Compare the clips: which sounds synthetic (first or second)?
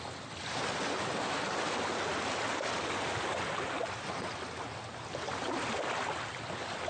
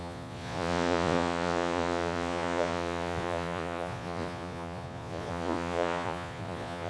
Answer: second